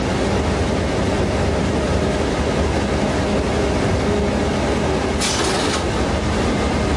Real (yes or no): yes